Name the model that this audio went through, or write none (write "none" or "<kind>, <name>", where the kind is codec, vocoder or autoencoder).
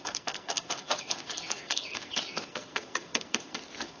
codec, SNAC